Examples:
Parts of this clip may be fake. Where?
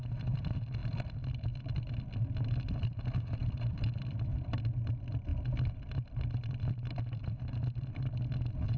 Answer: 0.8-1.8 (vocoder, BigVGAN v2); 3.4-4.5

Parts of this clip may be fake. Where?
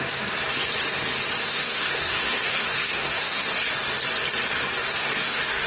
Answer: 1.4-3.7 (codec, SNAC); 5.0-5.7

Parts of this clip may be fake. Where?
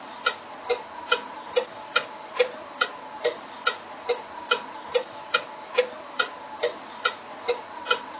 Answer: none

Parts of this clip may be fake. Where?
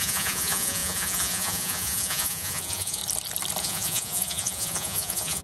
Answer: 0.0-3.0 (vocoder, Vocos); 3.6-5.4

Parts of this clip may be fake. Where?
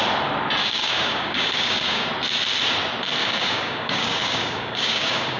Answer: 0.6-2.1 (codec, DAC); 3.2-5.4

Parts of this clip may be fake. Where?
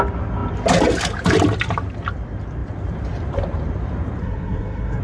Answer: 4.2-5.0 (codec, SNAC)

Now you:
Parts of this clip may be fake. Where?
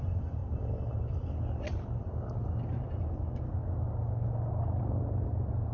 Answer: 0.0-0.4 (vocoder, BigVGAN v2); 2.0-3.6; 4.8-5.7